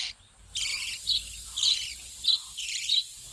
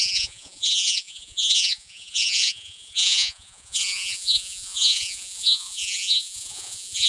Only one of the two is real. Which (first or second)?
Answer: first